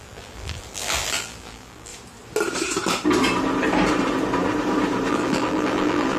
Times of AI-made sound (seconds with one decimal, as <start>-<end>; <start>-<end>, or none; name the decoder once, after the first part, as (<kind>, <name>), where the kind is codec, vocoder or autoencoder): 0.0-1.9 (vocoder, BigVGAN v2); 5.1-6.2

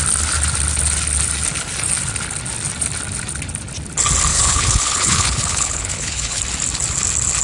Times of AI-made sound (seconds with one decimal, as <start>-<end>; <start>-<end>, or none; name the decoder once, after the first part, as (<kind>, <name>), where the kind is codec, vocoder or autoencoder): 4.3-6.4 (codec, HILCodec)

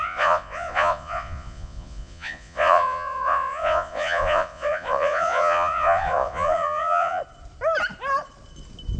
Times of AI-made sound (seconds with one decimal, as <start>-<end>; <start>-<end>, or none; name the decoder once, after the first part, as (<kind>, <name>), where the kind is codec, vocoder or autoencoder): 0.0-7.2 (vocoder, Vocos)

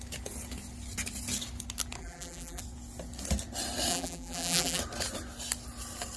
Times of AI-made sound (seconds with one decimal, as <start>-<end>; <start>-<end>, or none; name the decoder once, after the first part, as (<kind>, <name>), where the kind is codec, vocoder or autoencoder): 2.0-2.6 (vocoder, BigVGAN v2); 3.9-4.8